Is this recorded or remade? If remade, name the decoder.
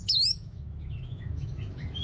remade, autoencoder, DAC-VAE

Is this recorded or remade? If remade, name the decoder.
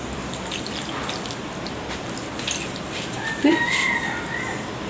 recorded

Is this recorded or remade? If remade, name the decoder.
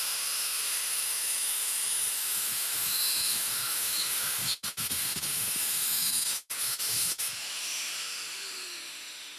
remade, autoencoder, DAC-VAE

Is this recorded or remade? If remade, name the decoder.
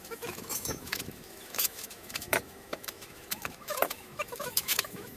remade, autoencoder, DAC-VAE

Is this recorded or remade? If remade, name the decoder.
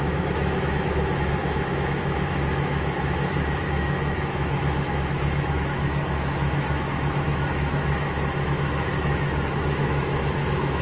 remade, autoencoder, DAC-VAE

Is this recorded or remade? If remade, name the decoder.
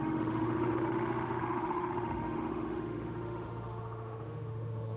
remade, autoencoder, DAC-VAE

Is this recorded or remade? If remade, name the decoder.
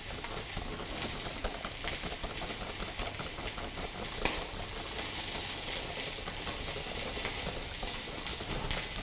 recorded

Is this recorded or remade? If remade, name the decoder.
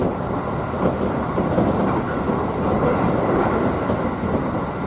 recorded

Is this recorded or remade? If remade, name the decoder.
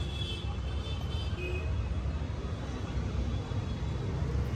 recorded